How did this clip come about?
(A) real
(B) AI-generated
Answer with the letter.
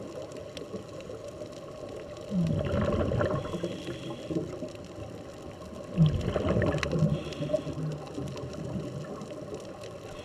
A